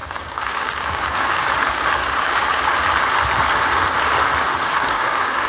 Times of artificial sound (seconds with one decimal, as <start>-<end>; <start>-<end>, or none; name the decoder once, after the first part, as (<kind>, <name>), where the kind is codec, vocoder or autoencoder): 0.0-1.5 (codec, DAC); 2.0-2.6; 4.5-5.5